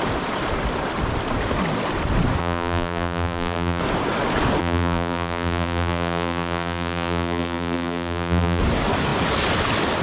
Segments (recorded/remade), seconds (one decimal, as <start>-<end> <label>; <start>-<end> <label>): 0.0-2.4 recorded; 2.4-3.8 remade; 3.8-4.6 recorded; 4.6-8.6 remade; 8.6-10.0 recorded